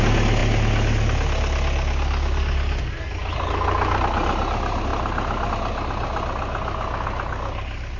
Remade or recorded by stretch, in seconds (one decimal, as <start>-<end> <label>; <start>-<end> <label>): 0.0-8.0 recorded